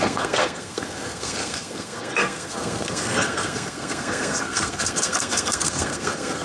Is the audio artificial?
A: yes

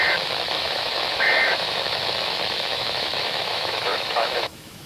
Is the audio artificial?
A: yes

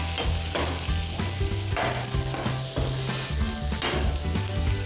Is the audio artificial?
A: no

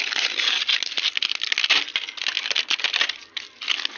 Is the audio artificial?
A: no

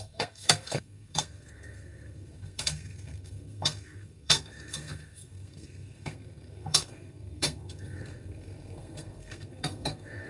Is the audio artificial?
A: yes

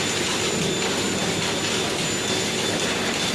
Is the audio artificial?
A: no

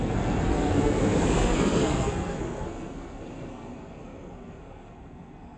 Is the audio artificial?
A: yes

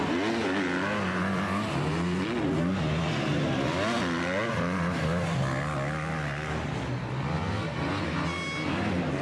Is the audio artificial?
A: no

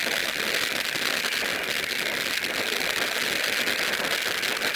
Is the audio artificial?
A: no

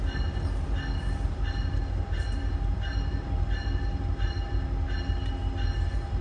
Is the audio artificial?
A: no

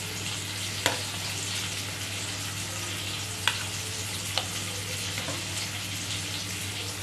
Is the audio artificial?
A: no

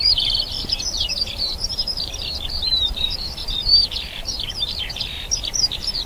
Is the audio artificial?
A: yes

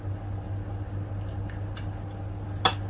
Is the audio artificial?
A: no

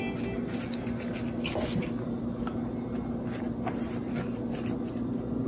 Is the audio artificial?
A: no